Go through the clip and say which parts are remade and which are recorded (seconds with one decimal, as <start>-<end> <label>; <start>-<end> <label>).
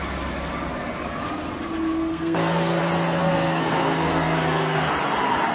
0.0-2.1 recorded; 2.1-2.8 remade; 2.8-3.2 recorded; 3.2-4.9 remade; 4.9-5.5 recorded